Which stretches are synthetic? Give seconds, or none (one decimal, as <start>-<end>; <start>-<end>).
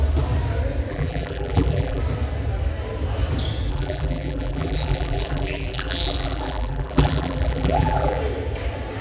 0.9-2.0; 3.7-8.2